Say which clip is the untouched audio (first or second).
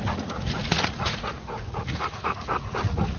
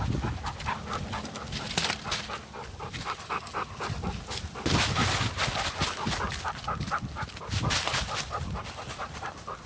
second